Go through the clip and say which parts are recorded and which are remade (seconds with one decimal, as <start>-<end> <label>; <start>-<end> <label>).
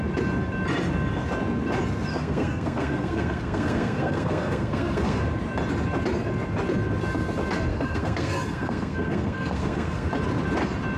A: 0.0-2.1 recorded; 2.1-5.2 remade; 5.2-7.7 recorded; 7.7-10.1 remade; 10.1-11.0 recorded